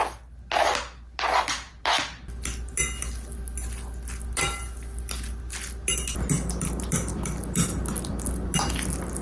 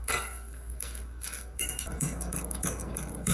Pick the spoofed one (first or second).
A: second